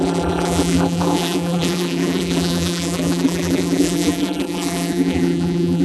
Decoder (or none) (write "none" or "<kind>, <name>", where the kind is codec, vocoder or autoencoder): vocoder, BigVGAN v2